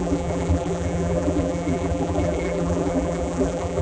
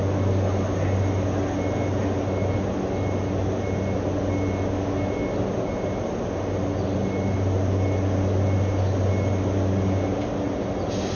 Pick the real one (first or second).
second